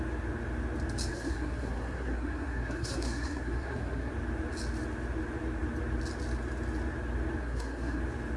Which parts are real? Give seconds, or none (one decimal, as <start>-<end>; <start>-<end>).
0.0-1.1; 4.1-7.4; 8.0-8.4